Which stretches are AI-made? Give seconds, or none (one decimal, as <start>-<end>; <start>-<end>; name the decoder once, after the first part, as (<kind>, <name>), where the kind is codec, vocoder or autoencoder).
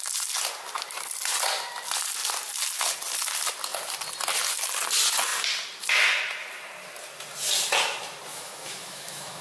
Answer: 8.3-9.4 (autoencoder, DAC-VAE)